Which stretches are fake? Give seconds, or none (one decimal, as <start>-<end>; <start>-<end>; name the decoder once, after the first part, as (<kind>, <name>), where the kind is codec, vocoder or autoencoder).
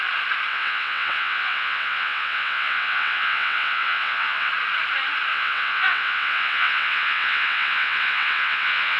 0.5-4.5 (vocoder, WaveNeXt); 5.3-9.0